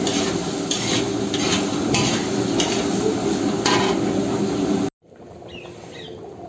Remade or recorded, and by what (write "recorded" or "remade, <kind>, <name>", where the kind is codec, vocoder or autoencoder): recorded